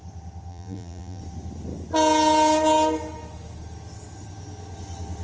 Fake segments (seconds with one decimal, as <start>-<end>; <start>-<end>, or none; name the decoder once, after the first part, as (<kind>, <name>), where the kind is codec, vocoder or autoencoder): 0.5-1.2 (vocoder, BigVGAN v2)